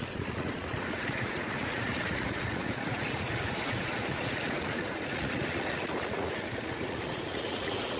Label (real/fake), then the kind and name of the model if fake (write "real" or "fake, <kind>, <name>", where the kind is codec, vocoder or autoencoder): fake, vocoder, Vocos